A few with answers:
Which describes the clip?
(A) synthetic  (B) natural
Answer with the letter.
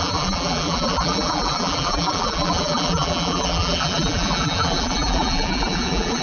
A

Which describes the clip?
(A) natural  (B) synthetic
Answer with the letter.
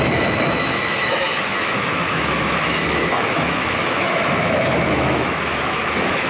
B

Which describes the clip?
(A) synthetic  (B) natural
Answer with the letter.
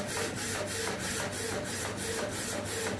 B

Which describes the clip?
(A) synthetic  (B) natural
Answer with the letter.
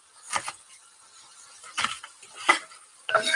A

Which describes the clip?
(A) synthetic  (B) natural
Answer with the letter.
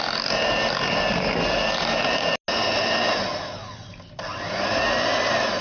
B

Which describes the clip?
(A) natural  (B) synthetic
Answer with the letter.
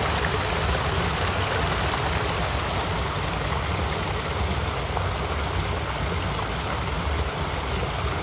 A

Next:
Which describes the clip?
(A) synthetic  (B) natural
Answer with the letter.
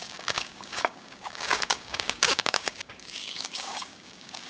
A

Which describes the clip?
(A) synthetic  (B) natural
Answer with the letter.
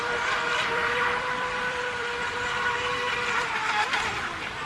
A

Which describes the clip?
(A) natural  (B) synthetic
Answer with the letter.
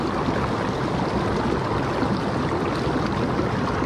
A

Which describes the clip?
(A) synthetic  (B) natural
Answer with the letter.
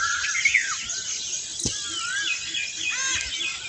B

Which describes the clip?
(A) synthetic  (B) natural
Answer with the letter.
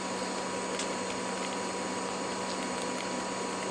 B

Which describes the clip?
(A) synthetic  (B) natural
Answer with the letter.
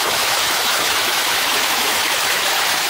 A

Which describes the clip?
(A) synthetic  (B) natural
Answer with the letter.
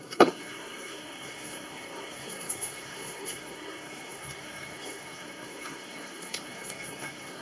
A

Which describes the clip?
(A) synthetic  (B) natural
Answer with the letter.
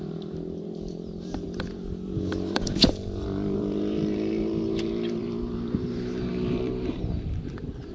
A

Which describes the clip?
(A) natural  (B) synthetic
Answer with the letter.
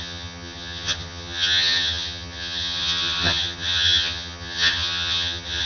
B